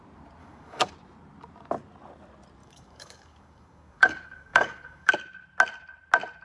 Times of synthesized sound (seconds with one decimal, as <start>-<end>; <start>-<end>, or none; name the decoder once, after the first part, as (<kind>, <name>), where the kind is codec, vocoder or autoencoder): 0.4-0.9 (codec, DAC); 2.6-5.1